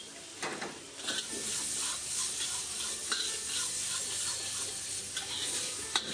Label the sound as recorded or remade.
recorded